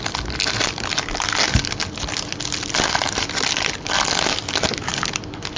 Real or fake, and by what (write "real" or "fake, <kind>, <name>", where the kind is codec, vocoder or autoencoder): real